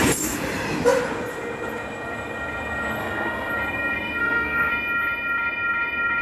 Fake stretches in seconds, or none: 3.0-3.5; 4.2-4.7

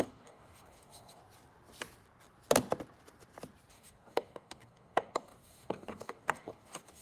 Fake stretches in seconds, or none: 0.0-1.2; 3.7-7.0

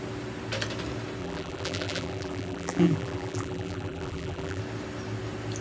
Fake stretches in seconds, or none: 1.2-4.6

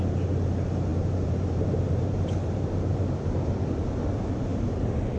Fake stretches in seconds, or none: 0.9-4.0

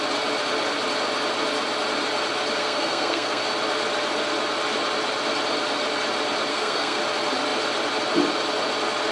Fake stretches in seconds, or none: 2.6-3.4; 6.5-7.0

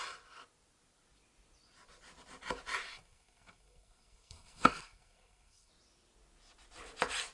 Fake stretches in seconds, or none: 2.9-5.7

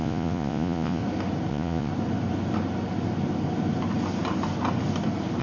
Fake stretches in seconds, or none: 0.0-1.0; 1.5-1.9

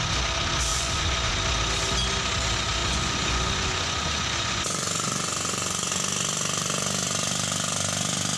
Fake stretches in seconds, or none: 0.7-1.3; 2.8-5.9